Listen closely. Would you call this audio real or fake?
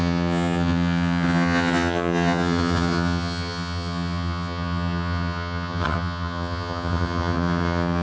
fake